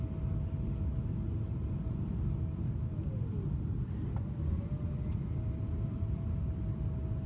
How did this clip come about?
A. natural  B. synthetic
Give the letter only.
A